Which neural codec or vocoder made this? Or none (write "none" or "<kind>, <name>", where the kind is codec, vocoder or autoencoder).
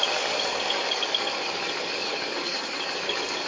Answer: codec, DAC